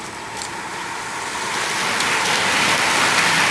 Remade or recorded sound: recorded